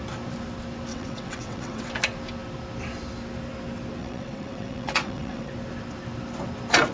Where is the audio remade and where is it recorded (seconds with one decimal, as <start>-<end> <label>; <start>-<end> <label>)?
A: 0.0-0.9 recorded; 0.9-1.8 remade; 1.8-4.0 recorded; 4.0-5.5 remade; 5.5-6.9 recorded